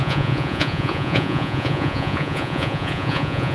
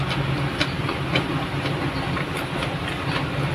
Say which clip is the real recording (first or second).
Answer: second